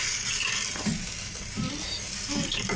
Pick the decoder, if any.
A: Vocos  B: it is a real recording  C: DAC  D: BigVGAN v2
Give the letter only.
B